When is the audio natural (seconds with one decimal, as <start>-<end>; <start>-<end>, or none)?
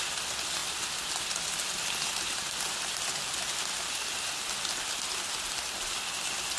0.0-6.6